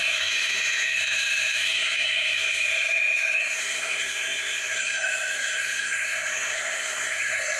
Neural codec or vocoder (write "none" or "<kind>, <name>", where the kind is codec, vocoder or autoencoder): codec, SNAC